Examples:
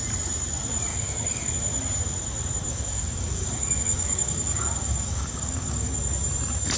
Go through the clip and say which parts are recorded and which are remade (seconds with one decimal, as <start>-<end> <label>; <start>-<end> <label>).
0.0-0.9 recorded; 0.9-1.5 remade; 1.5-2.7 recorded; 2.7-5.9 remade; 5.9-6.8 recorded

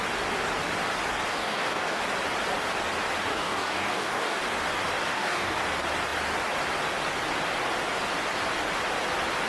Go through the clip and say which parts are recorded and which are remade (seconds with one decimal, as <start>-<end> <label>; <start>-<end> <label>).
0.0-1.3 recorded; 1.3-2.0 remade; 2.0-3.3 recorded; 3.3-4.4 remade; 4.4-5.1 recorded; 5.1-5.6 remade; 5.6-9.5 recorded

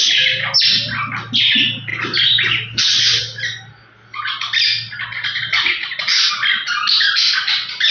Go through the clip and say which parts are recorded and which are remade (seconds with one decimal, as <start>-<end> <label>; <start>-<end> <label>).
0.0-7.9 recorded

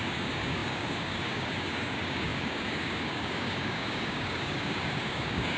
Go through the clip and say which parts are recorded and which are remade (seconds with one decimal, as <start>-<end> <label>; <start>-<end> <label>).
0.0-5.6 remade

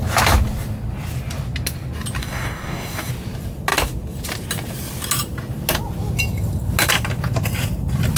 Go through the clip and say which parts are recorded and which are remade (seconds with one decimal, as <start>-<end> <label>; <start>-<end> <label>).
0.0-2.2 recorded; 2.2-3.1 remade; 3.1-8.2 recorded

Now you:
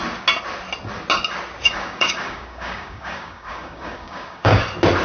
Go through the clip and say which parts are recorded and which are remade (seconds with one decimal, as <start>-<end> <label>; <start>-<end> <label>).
0.0-1.6 recorded; 1.6-4.6 remade; 4.6-5.0 recorded